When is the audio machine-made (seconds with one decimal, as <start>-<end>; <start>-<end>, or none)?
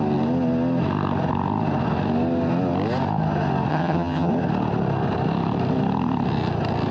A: 3.7-4.3